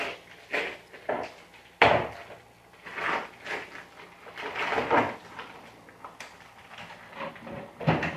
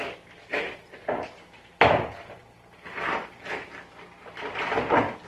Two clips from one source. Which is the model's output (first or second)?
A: second